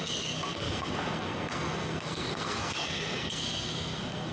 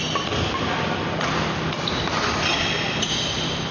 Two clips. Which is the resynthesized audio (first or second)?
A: first